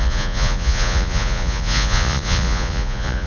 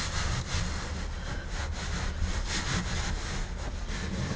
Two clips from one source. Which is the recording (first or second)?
second